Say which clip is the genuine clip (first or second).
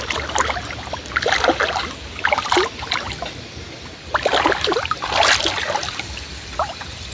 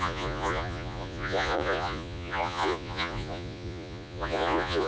first